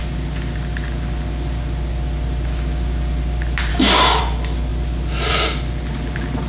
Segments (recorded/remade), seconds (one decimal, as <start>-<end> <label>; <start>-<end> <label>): 0.0-3.7 recorded; 3.7-4.2 remade; 4.2-6.5 recorded